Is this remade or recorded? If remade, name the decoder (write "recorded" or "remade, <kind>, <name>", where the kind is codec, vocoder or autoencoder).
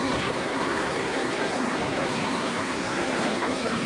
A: remade, codec, SNAC